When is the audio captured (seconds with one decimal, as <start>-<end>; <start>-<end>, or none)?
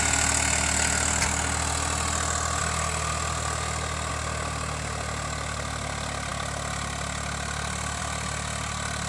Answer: 0.0-9.1